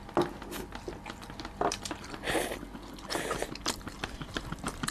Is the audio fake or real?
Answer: real